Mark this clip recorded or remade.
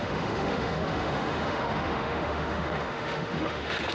remade